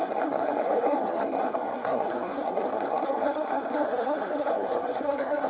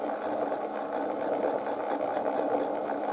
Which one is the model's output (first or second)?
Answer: first